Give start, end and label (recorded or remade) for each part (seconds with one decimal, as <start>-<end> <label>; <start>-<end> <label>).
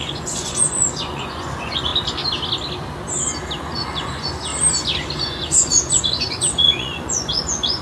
0.0-1.9 remade; 1.9-3.6 recorded; 3.6-4.5 remade; 4.5-5.2 recorded; 5.2-7.8 remade